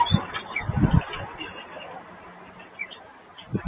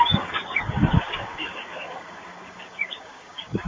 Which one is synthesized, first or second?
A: second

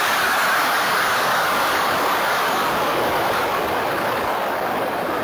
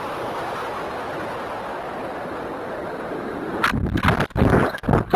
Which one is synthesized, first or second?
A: first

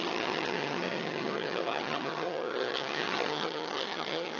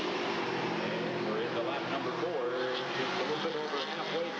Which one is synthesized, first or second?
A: first